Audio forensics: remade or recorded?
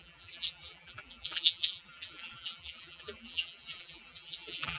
remade